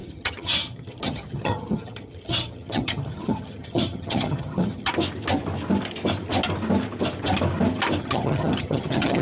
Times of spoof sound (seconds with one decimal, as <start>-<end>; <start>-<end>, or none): 0.0-4.9; 8.0-9.2